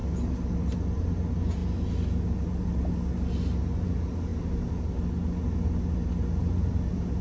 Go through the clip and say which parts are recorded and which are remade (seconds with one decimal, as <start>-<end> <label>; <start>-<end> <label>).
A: 0.0-7.2 recorded